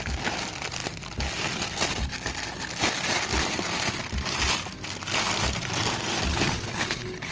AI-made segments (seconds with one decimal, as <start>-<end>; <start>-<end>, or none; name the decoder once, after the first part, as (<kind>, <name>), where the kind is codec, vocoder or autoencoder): 6.3-7.3 (codec, HILCodec)

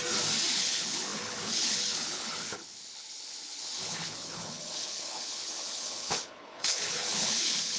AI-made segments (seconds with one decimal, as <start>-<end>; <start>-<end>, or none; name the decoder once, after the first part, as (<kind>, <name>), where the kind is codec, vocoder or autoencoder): 0.5-7.8 (codec, HILCodec)

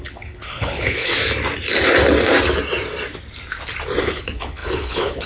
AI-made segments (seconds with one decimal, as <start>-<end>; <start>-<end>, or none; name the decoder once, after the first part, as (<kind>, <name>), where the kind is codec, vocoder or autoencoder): 0.0-1.1 (codec, HILCodec); 4.0-5.3